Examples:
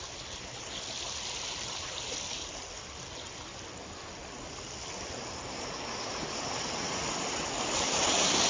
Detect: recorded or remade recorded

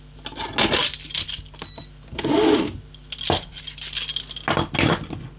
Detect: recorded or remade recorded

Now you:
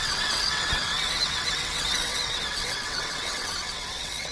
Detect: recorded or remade remade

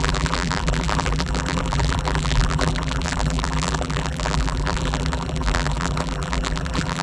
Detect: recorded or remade remade